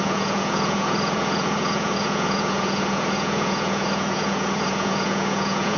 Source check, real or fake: fake